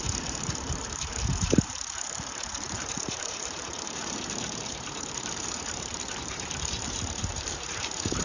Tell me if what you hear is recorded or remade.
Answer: remade